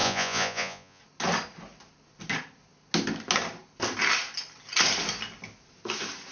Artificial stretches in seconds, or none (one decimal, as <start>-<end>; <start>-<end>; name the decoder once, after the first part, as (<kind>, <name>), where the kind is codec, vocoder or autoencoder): 0.0-1.0 (vocoder, Vocos)